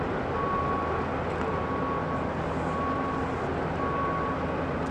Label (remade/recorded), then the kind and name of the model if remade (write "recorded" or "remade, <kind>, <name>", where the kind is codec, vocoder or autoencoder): recorded